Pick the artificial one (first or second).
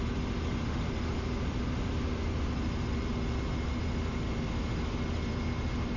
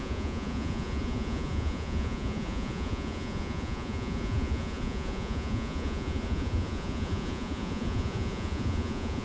second